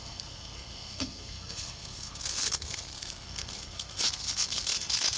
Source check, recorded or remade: remade